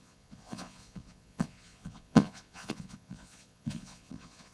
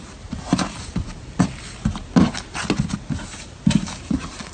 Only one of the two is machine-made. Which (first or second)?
first